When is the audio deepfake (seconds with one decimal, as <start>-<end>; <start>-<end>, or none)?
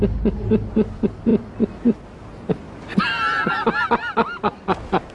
none